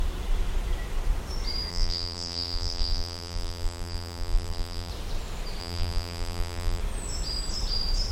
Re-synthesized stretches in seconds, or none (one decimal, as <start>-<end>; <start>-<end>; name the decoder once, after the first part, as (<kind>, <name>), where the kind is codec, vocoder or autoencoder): 1.7-4.9 (vocoder, BigVGAN v2); 5.6-6.8